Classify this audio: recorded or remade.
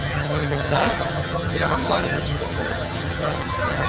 remade